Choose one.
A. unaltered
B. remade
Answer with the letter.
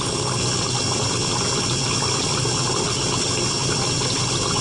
A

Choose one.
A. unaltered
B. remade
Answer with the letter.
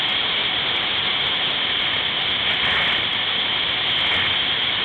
A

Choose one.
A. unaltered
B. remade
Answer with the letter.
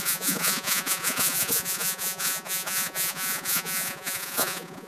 B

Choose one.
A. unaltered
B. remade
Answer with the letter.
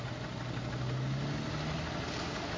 A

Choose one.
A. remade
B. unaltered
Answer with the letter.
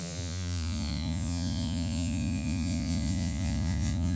A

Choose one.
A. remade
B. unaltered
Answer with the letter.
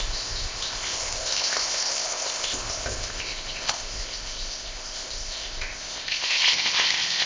A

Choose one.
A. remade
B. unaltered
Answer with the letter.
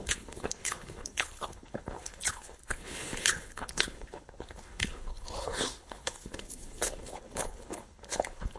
A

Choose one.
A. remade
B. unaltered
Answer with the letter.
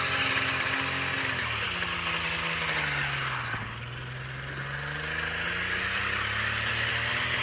B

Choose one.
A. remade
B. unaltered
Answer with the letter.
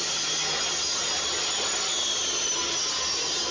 B